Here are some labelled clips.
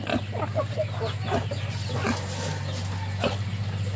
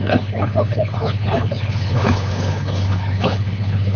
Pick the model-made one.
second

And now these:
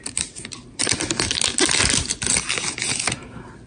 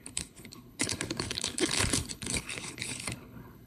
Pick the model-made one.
second